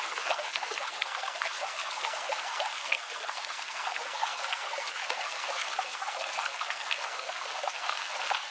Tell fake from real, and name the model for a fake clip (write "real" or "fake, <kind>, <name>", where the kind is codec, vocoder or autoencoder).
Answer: fake, codec, SNAC